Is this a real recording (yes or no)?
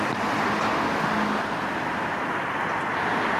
yes